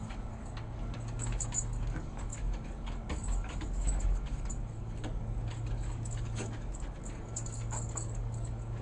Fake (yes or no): yes